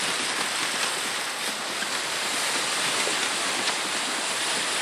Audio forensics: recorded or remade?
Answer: recorded